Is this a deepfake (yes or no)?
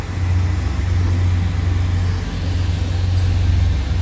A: no